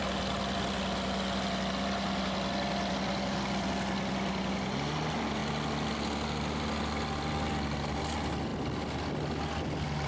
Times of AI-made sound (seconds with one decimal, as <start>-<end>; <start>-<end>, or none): none